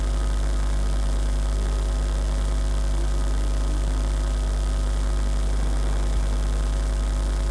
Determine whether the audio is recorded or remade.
recorded